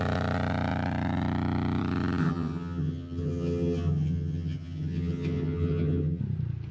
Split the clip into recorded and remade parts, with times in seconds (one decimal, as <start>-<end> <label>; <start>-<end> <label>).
0.0-2.2 recorded; 2.2-6.2 remade; 6.2-6.7 recorded